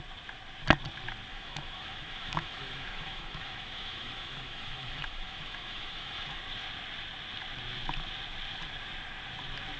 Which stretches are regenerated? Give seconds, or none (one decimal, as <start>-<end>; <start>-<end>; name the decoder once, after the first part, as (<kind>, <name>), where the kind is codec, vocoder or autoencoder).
1.3-6.4 (autoencoder, DAC-VAE)